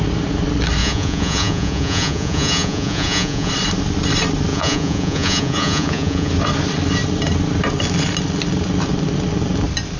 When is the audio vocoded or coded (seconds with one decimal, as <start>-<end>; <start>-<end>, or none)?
0.8-3.5; 4.5-6.3